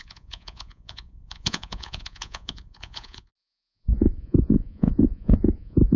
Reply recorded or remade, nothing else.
remade